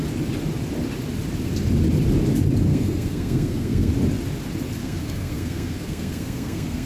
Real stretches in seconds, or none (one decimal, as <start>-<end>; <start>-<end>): 0.0-2.7; 3.9-4.8

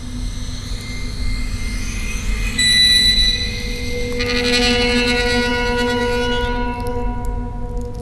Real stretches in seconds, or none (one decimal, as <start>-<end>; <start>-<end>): 0.0-8.0

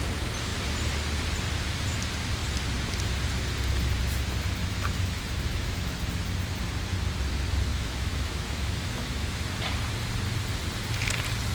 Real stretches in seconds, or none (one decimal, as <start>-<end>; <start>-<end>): 0.0-4.6; 6.1-7.7; 9.4-11.5

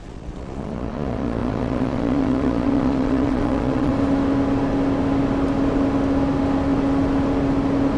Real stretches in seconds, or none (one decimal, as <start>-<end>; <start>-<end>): 3.9-8.0

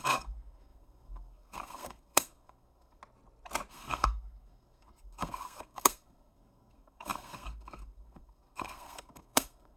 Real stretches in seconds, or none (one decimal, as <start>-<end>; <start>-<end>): 3.0-3.7

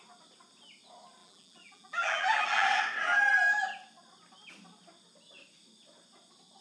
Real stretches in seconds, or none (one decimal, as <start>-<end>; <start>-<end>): 0.0-1.2; 2.8-6.6

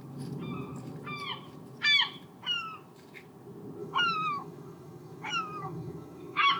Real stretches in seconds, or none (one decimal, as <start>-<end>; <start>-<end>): 0.0-3.8